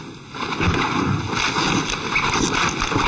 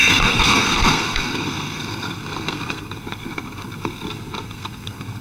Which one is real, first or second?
first